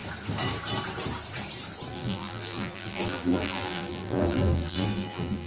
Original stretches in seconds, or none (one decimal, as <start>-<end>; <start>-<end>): 0.0-1.9